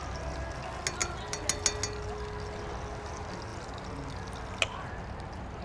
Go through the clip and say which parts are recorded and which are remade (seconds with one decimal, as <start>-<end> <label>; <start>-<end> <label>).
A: 0.0-5.6 recorded

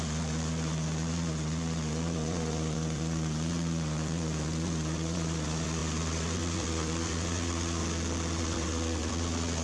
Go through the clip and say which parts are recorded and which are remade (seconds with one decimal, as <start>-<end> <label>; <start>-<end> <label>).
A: 0.0-7.8 remade; 7.8-8.4 recorded; 8.4-9.6 remade

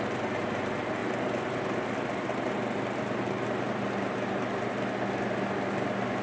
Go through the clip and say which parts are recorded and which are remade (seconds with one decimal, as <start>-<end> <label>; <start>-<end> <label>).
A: 0.0-6.2 recorded

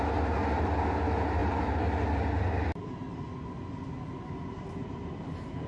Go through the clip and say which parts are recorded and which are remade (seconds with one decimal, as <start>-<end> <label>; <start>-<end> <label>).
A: 0.0-5.7 recorded

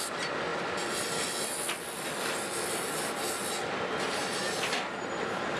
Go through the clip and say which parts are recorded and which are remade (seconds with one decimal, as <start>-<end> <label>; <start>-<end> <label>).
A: 0.0-5.6 recorded

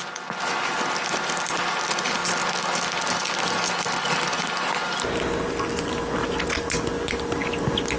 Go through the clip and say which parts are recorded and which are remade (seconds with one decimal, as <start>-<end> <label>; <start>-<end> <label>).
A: 0.0-8.0 recorded